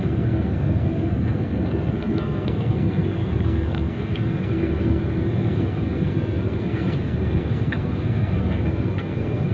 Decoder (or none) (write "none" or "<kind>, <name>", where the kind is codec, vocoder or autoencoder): codec, SNAC